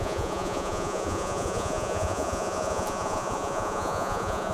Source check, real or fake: fake